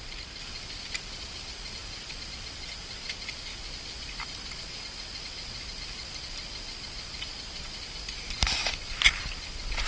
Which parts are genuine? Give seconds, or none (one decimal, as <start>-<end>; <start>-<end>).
0.0-9.9